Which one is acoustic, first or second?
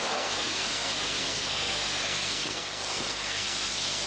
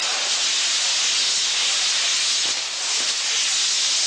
second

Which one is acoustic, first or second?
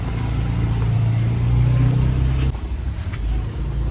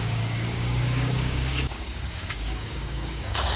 first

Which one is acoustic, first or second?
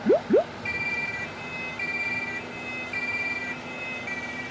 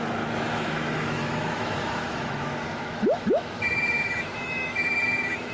first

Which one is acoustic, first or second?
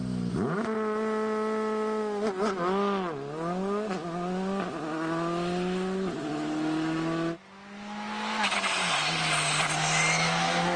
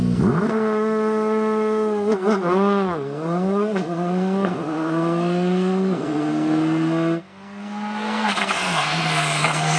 first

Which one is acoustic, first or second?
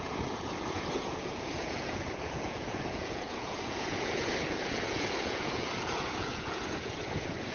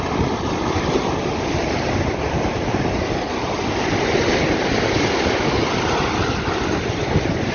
second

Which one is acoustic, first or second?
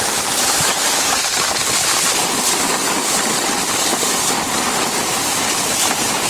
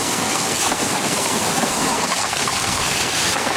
first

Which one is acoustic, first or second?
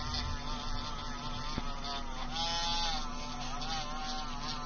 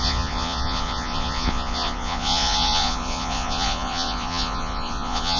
first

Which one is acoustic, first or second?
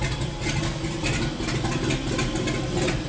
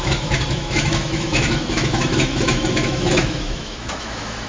first